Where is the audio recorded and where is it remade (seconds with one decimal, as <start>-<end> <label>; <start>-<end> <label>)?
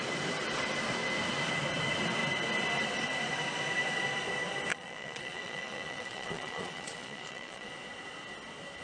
0.0-4.7 recorded; 4.7-7.7 remade; 7.7-8.8 recorded